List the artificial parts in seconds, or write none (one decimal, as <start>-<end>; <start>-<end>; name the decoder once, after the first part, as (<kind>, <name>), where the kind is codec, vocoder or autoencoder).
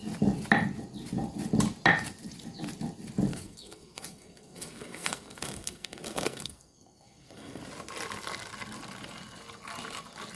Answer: 3.3-7.6 (codec, SNAC)